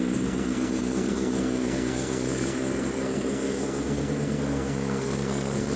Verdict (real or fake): fake